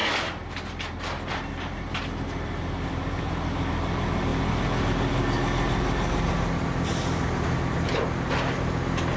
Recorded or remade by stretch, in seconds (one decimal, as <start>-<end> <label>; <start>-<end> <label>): 0.0-9.2 recorded